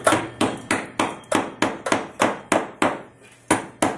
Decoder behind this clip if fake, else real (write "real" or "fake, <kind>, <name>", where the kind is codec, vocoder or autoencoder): real